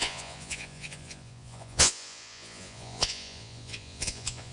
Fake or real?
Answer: fake